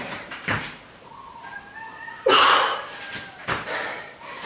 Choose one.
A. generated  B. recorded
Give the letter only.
A